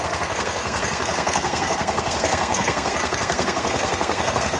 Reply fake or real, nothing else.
fake